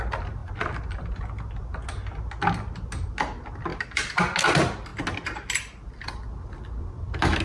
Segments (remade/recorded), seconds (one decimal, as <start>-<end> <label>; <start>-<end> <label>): 0.0-3.7 recorded; 3.7-4.2 remade; 4.2-7.4 recorded